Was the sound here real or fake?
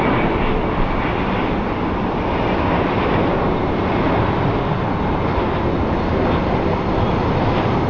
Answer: real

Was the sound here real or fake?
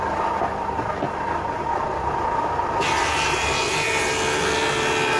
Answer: fake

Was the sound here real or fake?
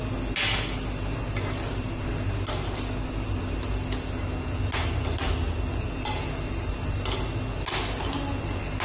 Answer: real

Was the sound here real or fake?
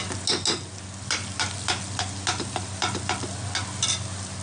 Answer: real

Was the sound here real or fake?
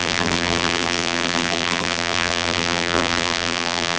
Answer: fake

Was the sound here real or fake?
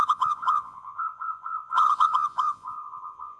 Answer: fake